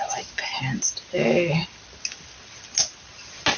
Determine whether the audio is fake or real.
real